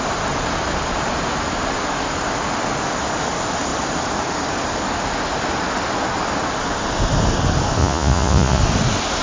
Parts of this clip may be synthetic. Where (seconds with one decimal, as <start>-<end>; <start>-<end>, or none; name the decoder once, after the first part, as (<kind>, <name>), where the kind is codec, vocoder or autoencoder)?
7.8-8.6 (vocoder, Vocos)